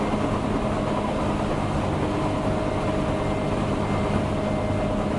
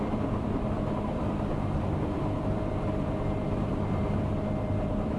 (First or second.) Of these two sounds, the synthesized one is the second